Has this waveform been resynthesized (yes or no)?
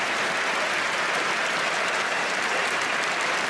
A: yes